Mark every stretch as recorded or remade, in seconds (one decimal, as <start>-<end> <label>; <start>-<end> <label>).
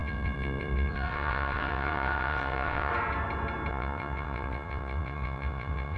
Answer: 0.0-2.9 remade; 2.9-3.7 recorded; 3.7-6.0 remade